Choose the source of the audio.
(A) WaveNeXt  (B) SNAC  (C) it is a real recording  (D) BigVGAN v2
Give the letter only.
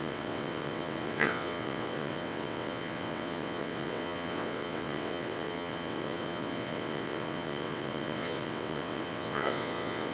A